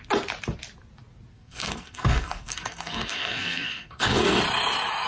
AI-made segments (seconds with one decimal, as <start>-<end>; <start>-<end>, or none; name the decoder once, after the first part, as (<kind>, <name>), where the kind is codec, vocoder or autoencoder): 1.3-4.4 (codec, SNAC)